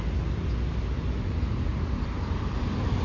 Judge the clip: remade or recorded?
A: recorded